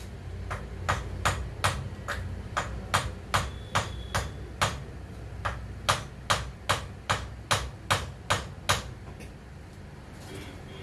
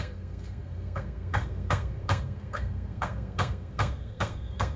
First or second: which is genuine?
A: first